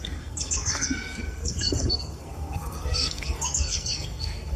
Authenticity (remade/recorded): remade